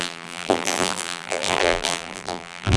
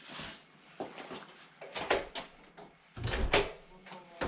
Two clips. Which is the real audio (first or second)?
second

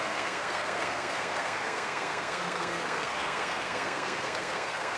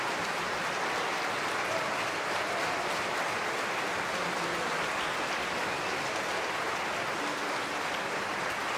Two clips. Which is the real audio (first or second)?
second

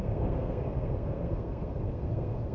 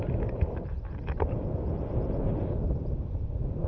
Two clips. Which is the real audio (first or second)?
second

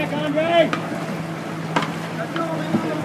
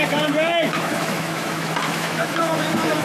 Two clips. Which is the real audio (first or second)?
first